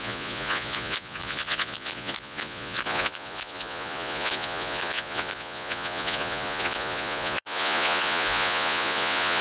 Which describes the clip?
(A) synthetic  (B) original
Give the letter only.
A